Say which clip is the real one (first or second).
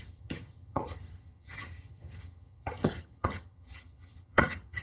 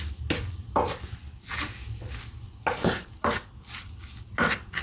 second